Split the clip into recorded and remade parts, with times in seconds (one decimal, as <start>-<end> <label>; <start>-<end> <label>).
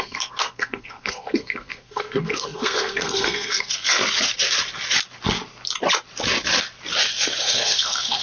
0.0-4.0 remade; 4.0-7.4 recorded; 7.4-8.2 remade